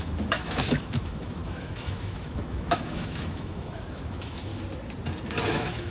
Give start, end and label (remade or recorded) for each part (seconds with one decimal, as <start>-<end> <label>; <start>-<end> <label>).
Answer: 0.0-4.5 remade; 4.5-5.5 recorded; 5.5-5.9 remade